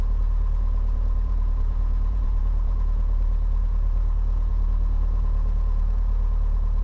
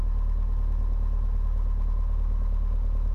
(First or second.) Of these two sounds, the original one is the second